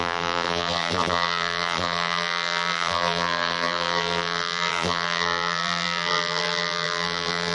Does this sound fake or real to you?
fake